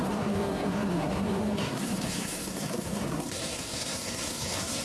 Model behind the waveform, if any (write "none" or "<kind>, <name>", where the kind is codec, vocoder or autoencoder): codec, SNAC